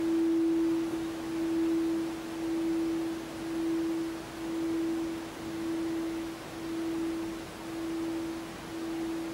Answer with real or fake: real